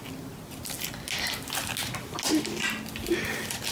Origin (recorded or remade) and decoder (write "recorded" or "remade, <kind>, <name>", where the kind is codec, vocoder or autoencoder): recorded